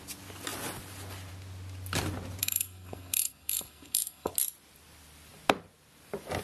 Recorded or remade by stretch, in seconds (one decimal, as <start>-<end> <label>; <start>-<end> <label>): 0.0-2.4 recorded; 2.4-4.3 remade; 4.3-6.4 recorded